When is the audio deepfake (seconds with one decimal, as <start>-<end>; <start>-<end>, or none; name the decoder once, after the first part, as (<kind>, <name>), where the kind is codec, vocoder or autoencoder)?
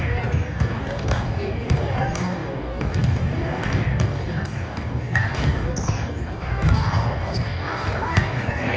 0.0-8.8 (codec, DAC)